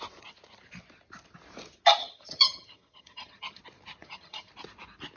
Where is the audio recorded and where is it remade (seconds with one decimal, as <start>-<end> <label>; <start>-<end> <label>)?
0.0-2.0 recorded; 2.0-3.6 remade; 3.6-4.0 recorded; 4.0-4.5 remade; 4.5-5.2 recorded